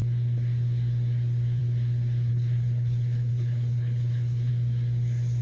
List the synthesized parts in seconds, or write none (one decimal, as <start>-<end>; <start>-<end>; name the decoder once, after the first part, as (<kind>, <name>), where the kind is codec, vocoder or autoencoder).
2.3-4.5 (codec, HILCodec)